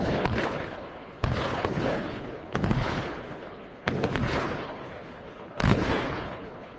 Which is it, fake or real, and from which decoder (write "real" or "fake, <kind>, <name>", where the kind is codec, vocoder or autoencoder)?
fake, codec, HILCodec